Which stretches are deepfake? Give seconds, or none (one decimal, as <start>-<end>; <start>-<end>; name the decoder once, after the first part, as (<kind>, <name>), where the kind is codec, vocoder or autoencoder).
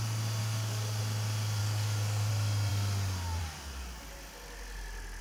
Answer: 0.4-1.0 (codec, DAC); 1.6-2.3